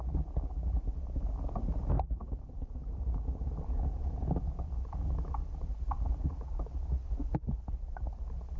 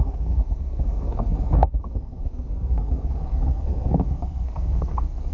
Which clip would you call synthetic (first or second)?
second